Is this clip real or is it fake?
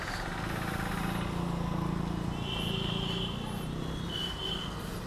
real